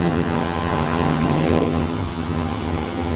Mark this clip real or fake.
fake